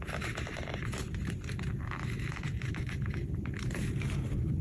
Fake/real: fake